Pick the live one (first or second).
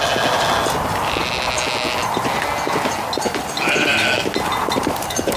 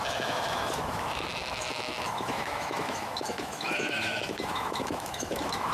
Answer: first